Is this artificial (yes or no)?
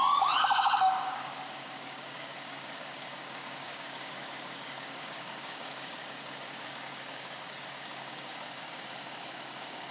yes